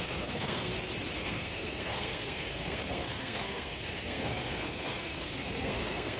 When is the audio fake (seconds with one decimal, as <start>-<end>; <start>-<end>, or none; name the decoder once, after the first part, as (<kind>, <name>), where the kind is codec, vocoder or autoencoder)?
0.0-0.7 (codec, SNAC); 1.2-6.2